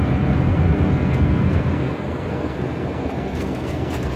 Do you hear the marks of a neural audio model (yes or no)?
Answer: yes